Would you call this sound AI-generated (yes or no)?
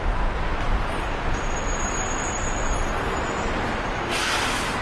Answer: no